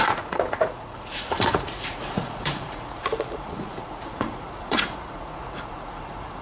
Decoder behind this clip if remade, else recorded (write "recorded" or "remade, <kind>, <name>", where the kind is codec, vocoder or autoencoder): remade, vocoder, Vocos